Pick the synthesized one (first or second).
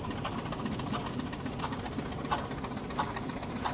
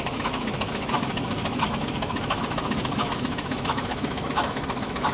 second